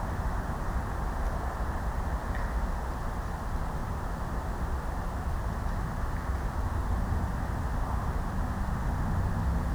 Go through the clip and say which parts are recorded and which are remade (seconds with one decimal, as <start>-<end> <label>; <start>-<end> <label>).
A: 0.0-3.8 recorded; 3.8-6.0 remade; 6.0-9.7 recorded

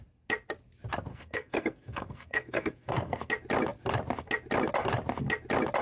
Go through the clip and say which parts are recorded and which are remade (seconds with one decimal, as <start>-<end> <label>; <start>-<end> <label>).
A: 0.0-1.1 recorded; 1.1-3.3 remade; 3.3-5.8 recorded

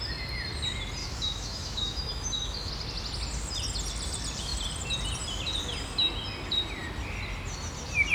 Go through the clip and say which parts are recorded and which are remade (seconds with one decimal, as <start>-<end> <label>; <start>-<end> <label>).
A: 0.0-1.0 recorded; 1.0-2.7 remade; 2.7-8.1 recorded

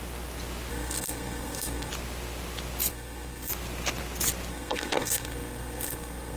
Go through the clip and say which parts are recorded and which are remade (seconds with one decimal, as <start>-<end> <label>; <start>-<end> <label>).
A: 0.0-0.7 recorded; 0.7-1.9 remade; 1.9-2.9 recorded; 2.9-3.5 remade; 3.5-4.5 recorded; 4.5-6.4 remade

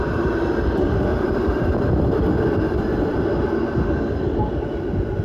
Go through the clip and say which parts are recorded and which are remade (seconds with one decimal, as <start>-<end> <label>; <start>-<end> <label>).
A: 0.0-1.1 recorded; 1.1-3.9 remade; 3.9-5.2 recorded

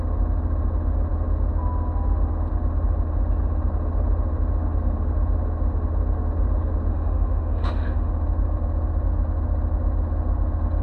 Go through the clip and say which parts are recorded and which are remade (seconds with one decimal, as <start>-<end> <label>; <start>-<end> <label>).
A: 0.0-6.9 recorded; 6.9-8.1 remade; 8.1-10.8 recorded